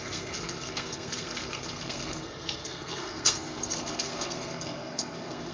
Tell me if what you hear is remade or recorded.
remade